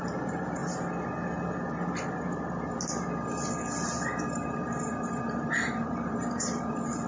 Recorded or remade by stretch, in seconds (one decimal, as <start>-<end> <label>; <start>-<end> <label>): 0.0-0.6 remade; 0.6-4.3 recorded; 4.3-7.1 remade